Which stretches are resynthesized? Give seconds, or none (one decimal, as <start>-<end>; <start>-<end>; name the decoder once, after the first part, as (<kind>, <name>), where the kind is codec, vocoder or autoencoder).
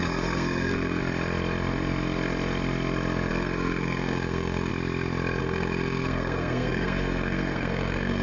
0.0-1.0 (codec, SNAC); 3.3-4.7; 5.4-8.2